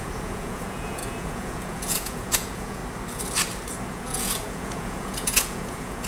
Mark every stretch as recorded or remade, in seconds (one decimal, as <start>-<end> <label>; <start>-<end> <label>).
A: 0.0-2.8 remade; 2.8-3.9 recorded; 3.9-6.1 remade

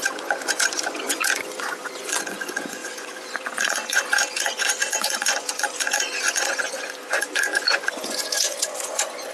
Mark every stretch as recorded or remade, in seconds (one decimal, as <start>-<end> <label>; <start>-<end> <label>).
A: 0.0-9.3 remade

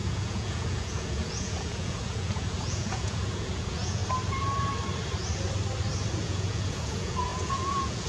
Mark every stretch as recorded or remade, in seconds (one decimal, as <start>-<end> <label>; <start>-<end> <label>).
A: 0.0-4.0 remade; 4.0-6.1 recorded; 6.1-8.1 remade

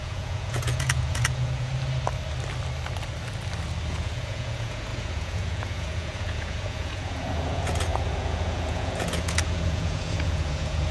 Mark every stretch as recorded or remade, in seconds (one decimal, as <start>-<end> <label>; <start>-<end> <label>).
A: 0.0-1.7 remade; 1.7-3.9 recorded; 3.9-10.9 remade

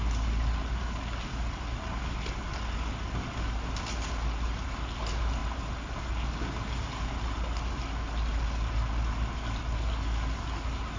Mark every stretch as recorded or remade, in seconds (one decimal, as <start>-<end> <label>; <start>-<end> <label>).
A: 0.0-11.0 recorded

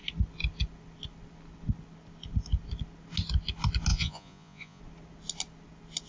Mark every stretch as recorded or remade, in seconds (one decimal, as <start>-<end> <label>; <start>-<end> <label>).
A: 0.0-3.9 recorded; 3.9-4.8 remade; 4.8-6.1 recorded

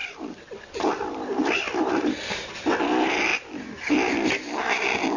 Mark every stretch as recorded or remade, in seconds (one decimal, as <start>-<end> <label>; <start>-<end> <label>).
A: 0.0-5.2 recorded